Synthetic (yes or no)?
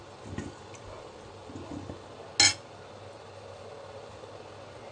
no